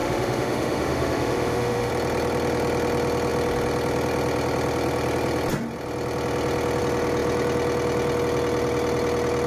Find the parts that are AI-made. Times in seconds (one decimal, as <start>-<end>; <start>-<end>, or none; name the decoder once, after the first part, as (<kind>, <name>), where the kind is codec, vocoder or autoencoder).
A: 0.0-1.9 (autoencoder, DAC-VAE)

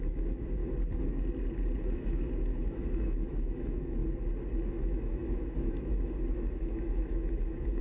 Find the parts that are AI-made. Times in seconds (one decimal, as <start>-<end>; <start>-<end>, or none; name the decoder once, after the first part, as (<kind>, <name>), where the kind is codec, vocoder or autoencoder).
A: 0.0-0.6 (autoencoder, DAC-VAE); 1.8-4.0; 4.7-7.8

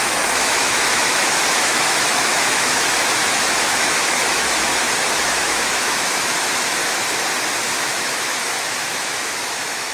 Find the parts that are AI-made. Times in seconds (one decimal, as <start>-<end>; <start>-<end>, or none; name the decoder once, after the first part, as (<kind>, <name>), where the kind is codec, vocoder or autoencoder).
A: 0.0-4.7 (autoencoder, DAC-VAE); 5.3-6.8; 7.6-9.9

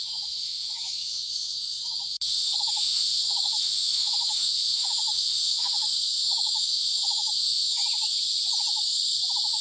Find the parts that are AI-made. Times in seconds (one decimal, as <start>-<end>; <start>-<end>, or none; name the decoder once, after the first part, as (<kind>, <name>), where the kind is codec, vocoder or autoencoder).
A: 0.0-7.8 (autoencoder, DAC-VAE)

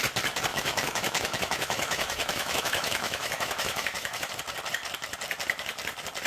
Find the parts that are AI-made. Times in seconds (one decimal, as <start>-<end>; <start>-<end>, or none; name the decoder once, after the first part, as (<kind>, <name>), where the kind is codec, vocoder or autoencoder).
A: 0.5-4.3 (autoencoder, DAC-VAE)

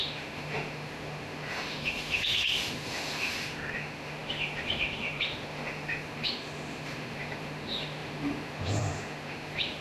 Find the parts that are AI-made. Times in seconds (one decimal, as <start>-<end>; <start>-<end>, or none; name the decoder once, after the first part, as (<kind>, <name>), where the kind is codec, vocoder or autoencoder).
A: 0.0-9.8 (autoencoder, DAC-VAE)

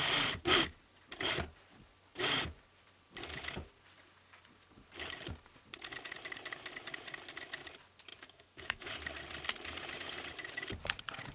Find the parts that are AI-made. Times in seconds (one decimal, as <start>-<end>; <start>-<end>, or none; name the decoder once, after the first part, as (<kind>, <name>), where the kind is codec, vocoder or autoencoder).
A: 8.1-8.9 (autoencoder, DAC-VAE)

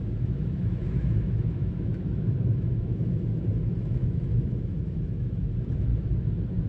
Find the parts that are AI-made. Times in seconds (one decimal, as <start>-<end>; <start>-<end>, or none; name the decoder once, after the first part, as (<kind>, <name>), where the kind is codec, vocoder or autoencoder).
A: 0.0-5.9 (autoencoder, DAC-VAE)